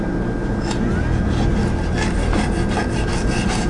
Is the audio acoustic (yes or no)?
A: yes